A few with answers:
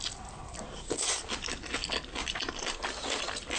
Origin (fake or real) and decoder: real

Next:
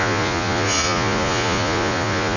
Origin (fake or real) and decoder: fake, vocoder, Vocos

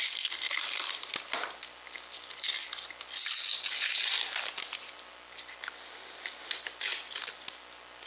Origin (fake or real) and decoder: real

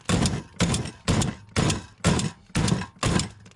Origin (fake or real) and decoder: real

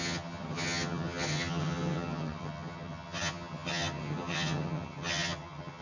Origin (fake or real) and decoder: fake, vocoder, HiFi-GAN